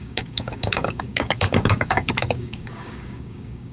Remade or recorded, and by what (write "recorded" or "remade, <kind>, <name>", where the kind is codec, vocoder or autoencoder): remade, codec, DAC